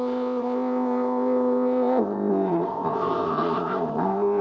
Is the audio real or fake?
fake